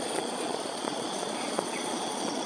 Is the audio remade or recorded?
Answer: remade